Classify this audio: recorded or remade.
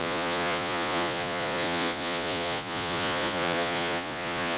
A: remade